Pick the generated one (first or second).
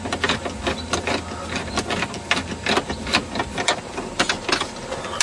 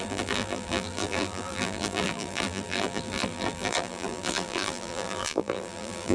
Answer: second